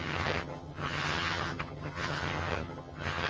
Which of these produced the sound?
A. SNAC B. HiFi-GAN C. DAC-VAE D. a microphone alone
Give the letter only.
B